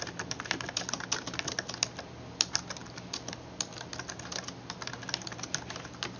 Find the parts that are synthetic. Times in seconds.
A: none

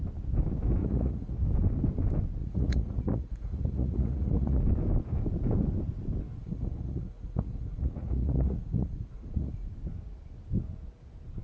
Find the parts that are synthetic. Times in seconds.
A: 0.8-1.3 (vocoder, Vocos); 2.4-4.6; 6.4-9.7